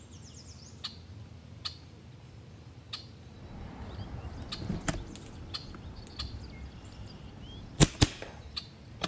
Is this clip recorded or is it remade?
recorded